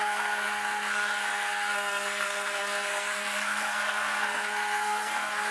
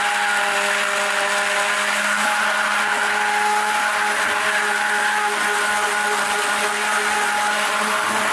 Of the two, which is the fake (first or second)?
first